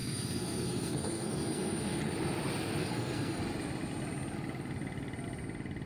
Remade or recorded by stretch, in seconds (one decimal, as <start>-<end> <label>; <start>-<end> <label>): 0.0-2.0 remade; 2.0-2.8 recorded; 2.8-3.4 remade; 3.4-5.9 recorded